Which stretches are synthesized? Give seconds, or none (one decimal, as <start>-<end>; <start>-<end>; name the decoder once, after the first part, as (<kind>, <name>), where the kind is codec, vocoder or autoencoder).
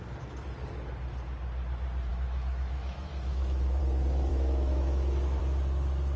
2.1-3.8 (autoencoder, DAC-VAE); 4.3-5.4